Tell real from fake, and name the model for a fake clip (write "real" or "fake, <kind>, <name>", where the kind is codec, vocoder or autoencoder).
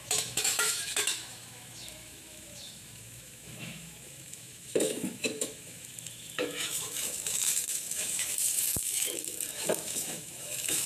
fake, autoencoder, DAC-VAE